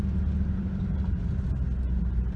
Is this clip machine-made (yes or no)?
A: no